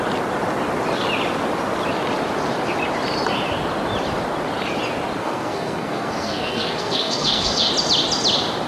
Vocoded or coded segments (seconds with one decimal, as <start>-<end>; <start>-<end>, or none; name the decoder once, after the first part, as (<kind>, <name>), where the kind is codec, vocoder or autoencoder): 5.2-7.7 (codec, SNAC)

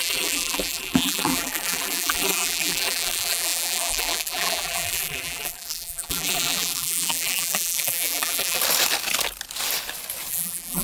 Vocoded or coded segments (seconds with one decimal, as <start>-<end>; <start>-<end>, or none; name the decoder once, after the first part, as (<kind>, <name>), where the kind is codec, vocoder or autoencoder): 0.0-8.6 (vocoder, BigVGAN v2); 10.3-10.8

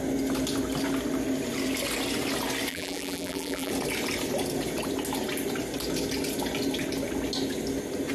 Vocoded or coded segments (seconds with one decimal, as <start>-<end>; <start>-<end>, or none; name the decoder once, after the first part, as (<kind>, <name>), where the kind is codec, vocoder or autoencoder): 2.7-3.7 (vocoder, BigVGAN v2)

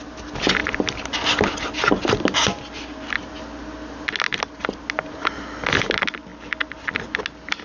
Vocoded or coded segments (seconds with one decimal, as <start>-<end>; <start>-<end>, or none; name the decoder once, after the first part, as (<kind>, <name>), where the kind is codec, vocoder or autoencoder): none

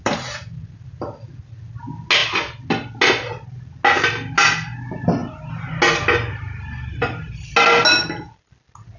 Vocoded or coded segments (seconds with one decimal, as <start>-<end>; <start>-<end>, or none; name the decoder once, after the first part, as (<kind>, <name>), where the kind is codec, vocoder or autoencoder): none

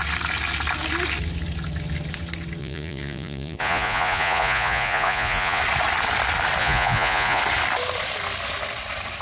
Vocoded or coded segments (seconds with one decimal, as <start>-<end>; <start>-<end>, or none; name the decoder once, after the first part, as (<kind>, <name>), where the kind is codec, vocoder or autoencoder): 2.6-5.6 (vocoder, Vocos); 6.6-7.4

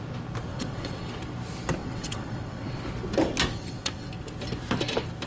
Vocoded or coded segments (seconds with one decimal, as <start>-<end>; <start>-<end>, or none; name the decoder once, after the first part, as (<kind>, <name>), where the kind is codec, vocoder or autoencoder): 0.5-1.1 (vocoder, WaveNeXt); 1.8-2.8; 3.5-4.1

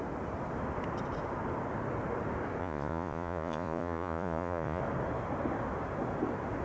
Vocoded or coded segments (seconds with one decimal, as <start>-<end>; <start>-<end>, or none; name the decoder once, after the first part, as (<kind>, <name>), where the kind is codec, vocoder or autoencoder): 2.6-4.8 (vocoder, Vocos)